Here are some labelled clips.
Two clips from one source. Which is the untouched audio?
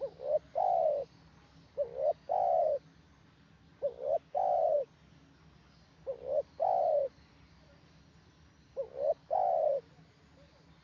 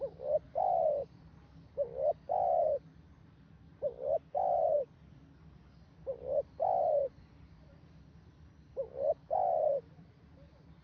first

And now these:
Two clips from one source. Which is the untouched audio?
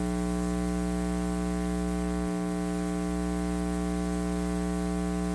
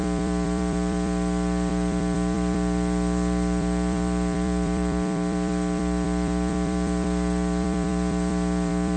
first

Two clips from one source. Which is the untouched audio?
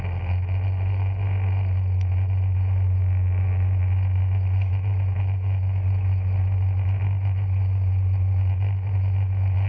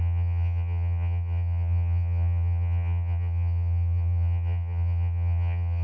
first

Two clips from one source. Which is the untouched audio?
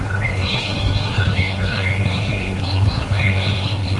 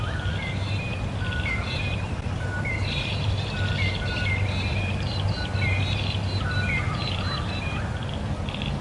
second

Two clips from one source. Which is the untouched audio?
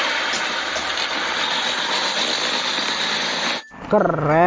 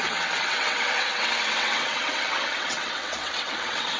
first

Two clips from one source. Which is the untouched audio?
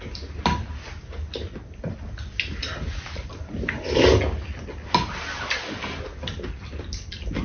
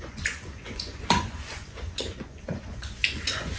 first